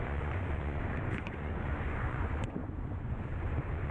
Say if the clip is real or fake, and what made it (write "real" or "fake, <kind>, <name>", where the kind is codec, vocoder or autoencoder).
fake, vocoder, Vocos